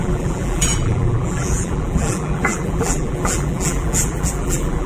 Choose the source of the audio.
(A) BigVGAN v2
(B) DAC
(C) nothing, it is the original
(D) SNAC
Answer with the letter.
A